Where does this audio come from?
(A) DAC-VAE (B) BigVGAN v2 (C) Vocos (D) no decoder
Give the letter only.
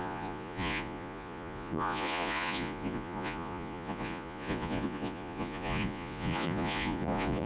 C